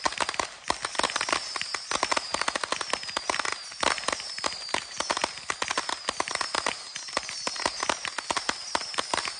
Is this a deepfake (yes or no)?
no